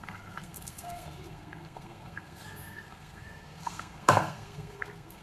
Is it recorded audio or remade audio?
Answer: remade